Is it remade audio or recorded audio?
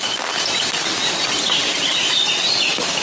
recorded